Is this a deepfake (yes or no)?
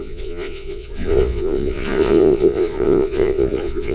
yes